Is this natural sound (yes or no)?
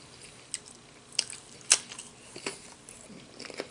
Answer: yes